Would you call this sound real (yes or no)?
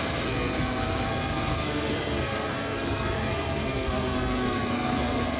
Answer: no